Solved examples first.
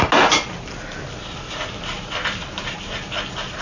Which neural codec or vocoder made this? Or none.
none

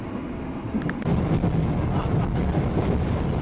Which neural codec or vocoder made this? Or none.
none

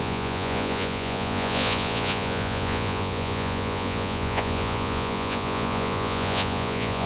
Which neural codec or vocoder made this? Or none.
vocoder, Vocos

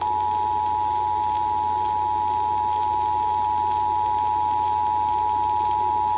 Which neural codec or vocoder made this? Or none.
none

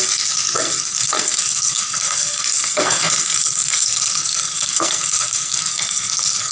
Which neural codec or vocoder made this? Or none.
codec, SNAC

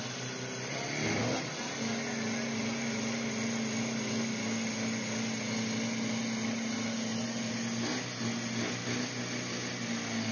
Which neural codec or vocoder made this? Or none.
none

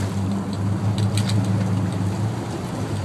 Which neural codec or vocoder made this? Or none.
none